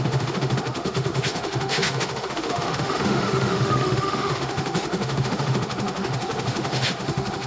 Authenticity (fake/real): fake